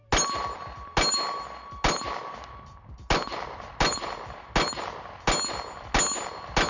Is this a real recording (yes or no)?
yes